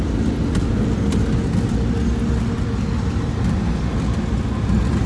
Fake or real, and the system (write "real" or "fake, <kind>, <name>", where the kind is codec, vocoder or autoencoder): real